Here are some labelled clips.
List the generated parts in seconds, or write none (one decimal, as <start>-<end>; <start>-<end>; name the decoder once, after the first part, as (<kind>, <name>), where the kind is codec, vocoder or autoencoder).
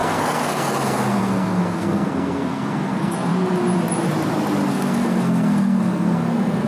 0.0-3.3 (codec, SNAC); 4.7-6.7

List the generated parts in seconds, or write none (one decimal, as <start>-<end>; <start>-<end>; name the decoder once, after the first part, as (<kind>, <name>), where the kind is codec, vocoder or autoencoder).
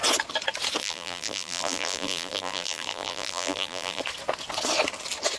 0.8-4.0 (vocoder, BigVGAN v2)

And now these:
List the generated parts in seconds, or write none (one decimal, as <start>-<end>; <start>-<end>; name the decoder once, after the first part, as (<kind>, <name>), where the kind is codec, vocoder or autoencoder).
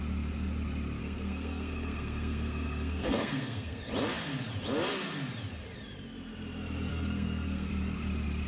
1.0-3.8 (codec, SNAC); 6.9-7.7